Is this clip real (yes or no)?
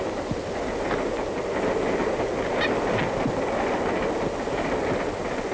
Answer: yes